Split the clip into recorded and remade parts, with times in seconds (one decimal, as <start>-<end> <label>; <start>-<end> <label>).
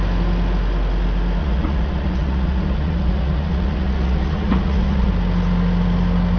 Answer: 0.0-1.4 recorded; 1.4-5.1 remade; 5.1-6.4 recorded